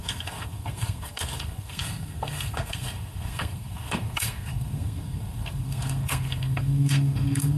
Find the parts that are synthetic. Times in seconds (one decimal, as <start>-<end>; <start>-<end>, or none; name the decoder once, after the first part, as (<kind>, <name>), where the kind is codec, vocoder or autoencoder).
0.0-7.6 (codec, SNAC)

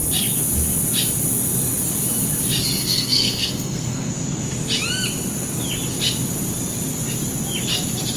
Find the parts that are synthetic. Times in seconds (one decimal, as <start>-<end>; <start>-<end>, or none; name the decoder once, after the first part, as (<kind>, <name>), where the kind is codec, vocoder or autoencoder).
2.8-4.1 (codec, SNAC)

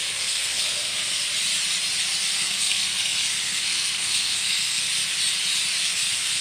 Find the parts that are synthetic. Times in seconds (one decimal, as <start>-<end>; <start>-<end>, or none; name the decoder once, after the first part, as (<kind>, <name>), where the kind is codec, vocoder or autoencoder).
0.0-1.2 (codec, SNAC); 2.3-4.9; 5.8-6.4

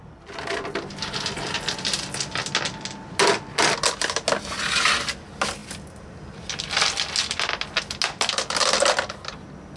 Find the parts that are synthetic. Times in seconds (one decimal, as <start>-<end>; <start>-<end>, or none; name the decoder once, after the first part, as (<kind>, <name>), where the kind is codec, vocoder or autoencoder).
none

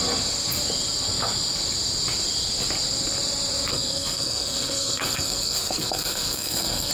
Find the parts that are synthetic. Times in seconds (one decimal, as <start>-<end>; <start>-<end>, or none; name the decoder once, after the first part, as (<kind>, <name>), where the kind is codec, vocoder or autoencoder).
3.7-6.9 (codec, SNAC)

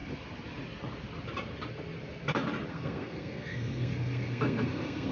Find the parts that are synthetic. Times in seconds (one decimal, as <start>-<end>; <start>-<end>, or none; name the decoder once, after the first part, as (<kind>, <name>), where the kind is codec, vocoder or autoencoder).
2.7-5.1 (codec, SNAC)

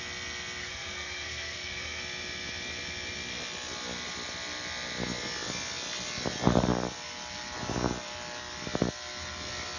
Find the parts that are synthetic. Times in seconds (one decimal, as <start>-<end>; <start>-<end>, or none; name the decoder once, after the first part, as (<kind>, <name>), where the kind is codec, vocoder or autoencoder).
0.6-2.0 (codec, SNAC)

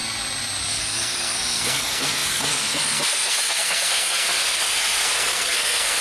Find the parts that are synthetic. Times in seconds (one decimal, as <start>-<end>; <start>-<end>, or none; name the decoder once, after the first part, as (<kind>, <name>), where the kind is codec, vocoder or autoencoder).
0.6-6.0 (codec, SNAC)